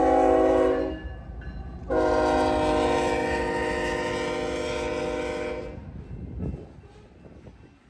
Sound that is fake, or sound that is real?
real